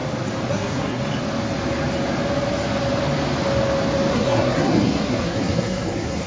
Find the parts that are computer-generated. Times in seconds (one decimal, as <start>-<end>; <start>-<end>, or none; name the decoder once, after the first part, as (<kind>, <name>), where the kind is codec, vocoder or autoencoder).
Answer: 0.5-1.0 (codec, SNAC); 4.1-6.3